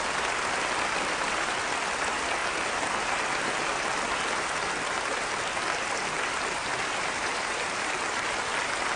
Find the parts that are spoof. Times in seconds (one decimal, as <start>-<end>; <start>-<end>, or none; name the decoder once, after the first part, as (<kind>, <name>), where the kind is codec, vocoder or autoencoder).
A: 6.7-8.0 (vocoder, BigVGAN v2)